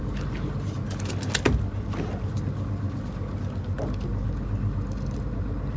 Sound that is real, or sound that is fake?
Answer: real